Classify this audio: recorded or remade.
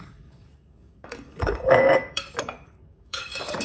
remade